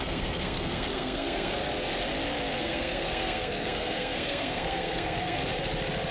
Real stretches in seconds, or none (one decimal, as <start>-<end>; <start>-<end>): 1.7-2.6; 5.4-6.1